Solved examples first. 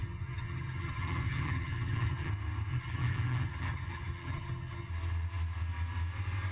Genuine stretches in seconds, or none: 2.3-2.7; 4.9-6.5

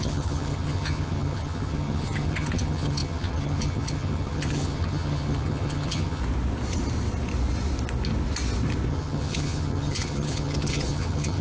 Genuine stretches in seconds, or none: 6.2-8.9

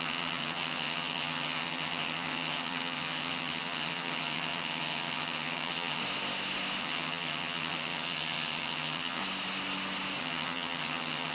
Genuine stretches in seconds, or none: 6.0-6.8; 9.2-10.2